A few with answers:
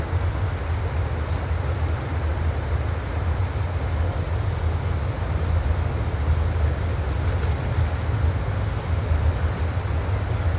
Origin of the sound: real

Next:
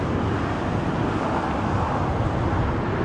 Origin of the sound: real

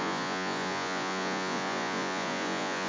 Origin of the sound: fake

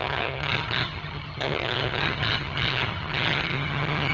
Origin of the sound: fake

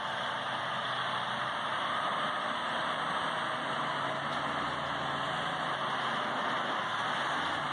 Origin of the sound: real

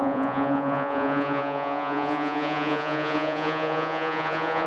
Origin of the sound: fake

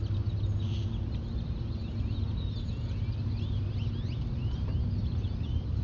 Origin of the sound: real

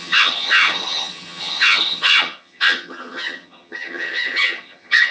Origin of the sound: fake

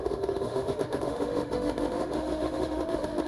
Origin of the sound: fake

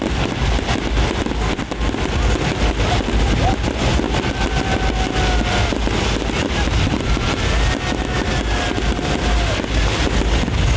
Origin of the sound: real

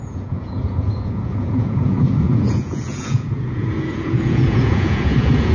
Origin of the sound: fake